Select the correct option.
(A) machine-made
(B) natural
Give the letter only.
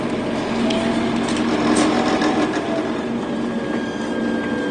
B